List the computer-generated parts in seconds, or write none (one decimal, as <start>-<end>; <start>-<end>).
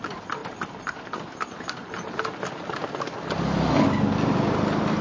none